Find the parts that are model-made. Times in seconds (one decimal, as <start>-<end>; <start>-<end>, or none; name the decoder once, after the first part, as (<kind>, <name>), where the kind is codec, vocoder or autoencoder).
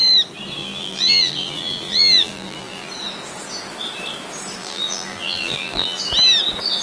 0.6-2.9 (vocoder, BigVGAN v2); 4.6-6.0